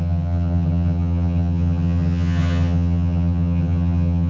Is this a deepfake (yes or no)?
yes